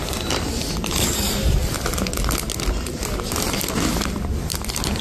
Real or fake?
real